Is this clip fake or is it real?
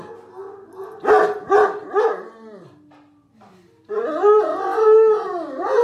real